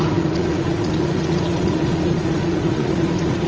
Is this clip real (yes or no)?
no